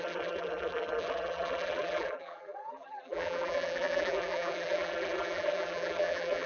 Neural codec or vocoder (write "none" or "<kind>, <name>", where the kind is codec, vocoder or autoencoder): vocoder, BigVGAN v2